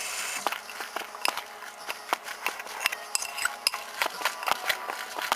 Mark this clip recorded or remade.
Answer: recorded